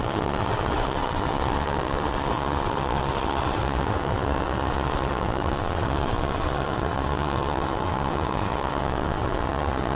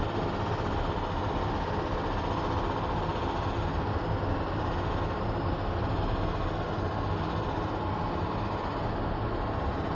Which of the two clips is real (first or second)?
second